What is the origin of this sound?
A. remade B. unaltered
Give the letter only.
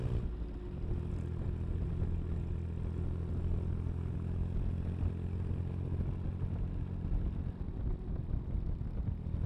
B